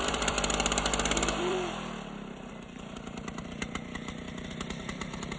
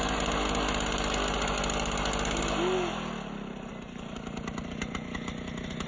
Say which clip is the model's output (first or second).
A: first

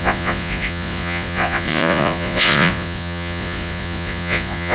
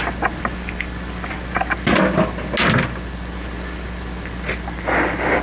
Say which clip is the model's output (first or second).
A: first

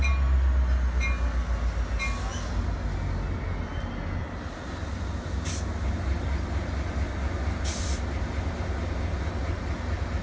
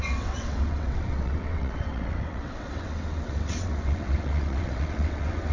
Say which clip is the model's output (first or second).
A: second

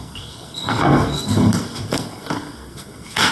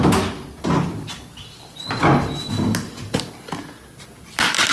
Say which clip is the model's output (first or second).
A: first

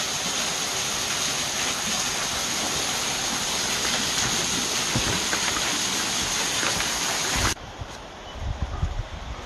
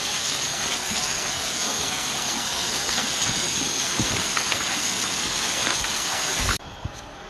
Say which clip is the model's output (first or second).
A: second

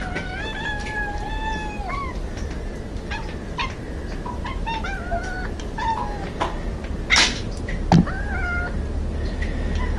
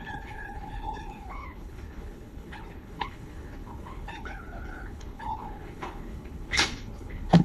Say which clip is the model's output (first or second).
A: second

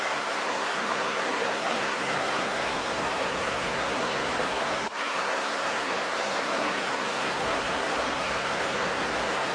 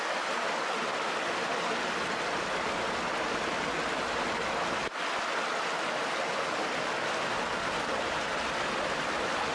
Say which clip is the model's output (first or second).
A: first